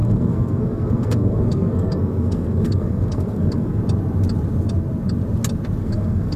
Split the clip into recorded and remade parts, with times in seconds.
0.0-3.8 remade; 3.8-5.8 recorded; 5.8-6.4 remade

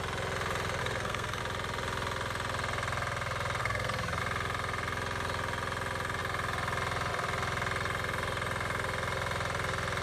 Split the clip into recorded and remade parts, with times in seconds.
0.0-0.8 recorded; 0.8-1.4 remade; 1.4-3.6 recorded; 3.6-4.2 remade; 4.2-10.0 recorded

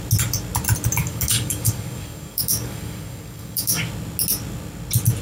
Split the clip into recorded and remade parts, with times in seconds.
0.0-1.0 recorded; 1.0-3.8 remade; 3.8-5.2 recorded

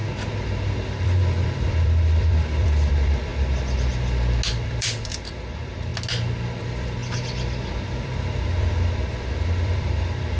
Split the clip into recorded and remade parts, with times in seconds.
0.0-0.8 recorded; 0.8-3.3 remade; 3.3-4.5 recorded; 4.5-5.9 remade; 5.9-6.6 recorded; 6.6-7.0 remade; 7.0-7.7 recorded; 7.7-10.4 remade